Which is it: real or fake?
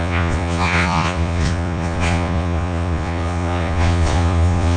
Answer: fake